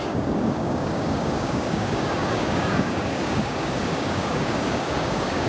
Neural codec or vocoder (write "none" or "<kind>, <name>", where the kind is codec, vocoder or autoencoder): codec, DAC